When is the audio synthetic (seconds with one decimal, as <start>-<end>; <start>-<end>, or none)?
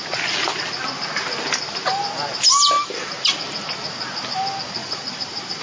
4.8-5.6